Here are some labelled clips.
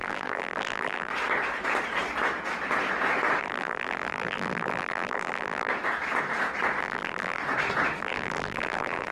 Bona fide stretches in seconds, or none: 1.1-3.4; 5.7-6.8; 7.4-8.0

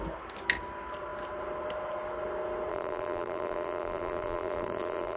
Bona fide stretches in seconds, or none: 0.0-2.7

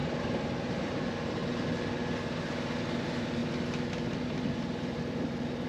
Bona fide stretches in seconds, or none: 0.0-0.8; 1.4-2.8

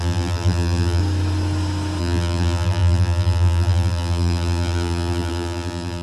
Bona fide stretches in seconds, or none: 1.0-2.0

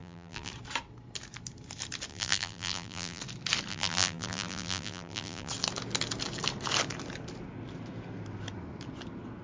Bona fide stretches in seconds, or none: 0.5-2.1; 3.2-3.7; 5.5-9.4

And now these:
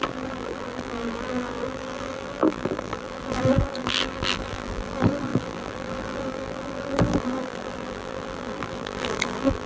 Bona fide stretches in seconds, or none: none